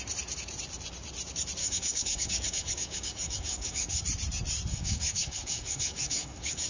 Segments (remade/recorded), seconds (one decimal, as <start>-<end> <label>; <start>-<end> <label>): 0.0-1.6 recorded; 1.6-4.0 remade; 4.0-4.7 recorded; 4.7-6.7 remade